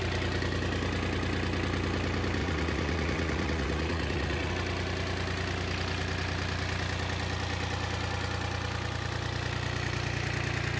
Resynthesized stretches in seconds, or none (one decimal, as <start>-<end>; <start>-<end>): 2.4-4.5